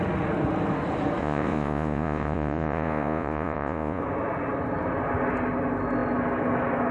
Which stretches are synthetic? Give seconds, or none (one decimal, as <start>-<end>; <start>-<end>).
1.2-4.0